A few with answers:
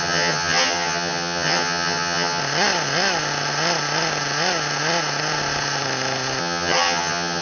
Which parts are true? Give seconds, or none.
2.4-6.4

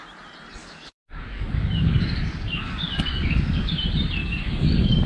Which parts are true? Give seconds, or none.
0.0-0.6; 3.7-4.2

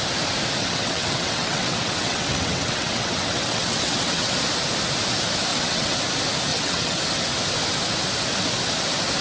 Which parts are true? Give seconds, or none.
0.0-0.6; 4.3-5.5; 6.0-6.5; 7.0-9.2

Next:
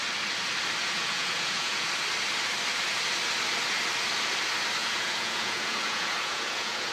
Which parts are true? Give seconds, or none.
0.0-0.8; 1.9-4.8